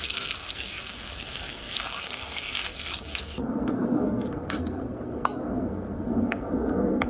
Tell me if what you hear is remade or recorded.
remade